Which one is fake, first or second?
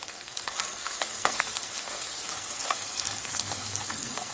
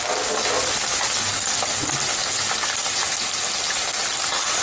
first